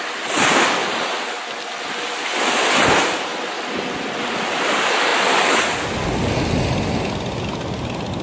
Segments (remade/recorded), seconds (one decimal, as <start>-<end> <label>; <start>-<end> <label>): 0.0-8.2 recorded